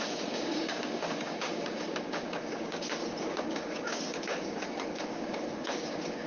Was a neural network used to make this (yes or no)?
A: yes